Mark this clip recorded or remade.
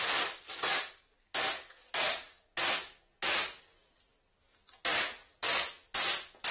recorded